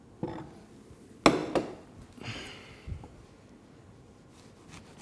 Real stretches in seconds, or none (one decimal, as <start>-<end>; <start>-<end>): 0.0-5.0